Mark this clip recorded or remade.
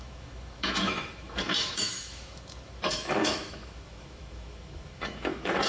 remade